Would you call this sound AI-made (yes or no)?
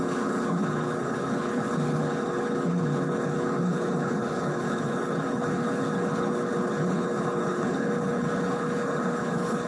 yes